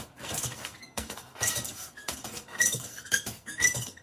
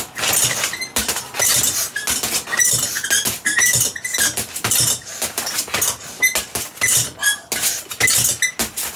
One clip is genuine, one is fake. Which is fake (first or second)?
first